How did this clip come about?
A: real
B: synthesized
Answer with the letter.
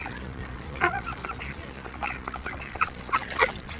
B